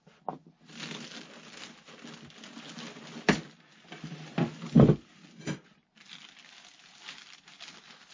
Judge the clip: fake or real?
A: real